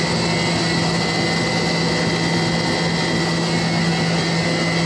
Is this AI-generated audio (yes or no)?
no